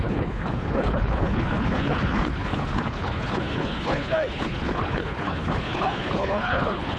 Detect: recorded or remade remade